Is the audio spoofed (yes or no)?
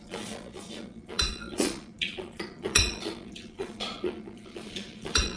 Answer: yes